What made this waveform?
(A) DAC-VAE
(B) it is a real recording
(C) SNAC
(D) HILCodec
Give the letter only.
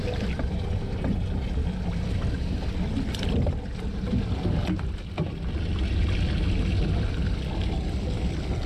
B